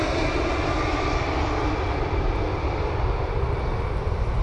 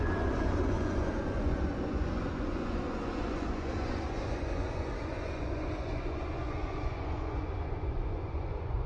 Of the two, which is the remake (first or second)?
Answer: second